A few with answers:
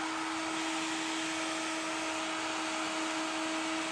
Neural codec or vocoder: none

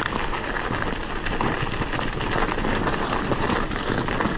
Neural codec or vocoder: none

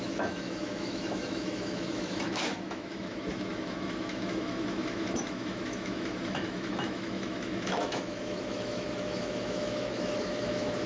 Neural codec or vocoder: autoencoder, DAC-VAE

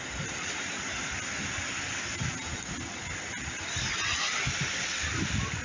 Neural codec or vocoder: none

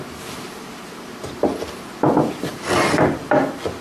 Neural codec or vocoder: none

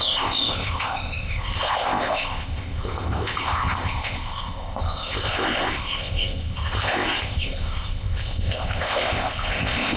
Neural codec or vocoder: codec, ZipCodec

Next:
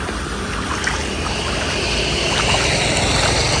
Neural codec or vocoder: none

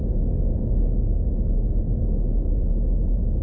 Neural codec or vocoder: none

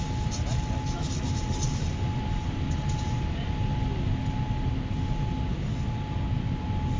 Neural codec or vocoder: none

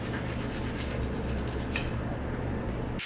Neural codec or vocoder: none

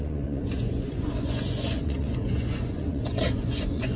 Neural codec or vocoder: vocoder, Vocos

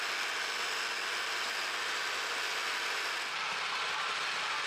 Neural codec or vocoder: none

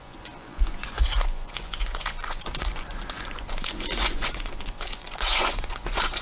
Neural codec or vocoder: vocoder, Vocos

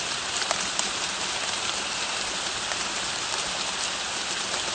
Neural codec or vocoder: none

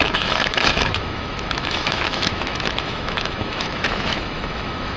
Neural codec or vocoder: autoencoder, DAC-VAE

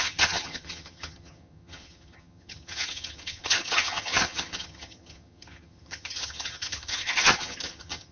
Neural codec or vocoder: vocoder, HiFi-GAN